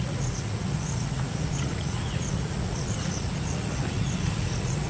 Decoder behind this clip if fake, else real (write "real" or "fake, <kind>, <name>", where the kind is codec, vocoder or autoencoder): fake, vocoder, Vocos